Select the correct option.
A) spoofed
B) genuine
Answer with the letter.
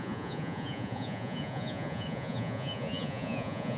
A